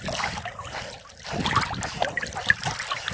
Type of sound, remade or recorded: recorded